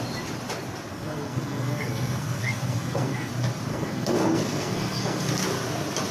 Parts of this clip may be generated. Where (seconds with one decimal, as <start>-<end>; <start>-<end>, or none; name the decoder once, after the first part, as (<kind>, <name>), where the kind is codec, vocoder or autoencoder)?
0.9-3.3 (codec, SNAC); 3.7-5.3